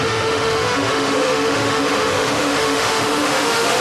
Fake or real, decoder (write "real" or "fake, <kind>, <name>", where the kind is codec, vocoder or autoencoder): fake, autoencoder, DAC-VAE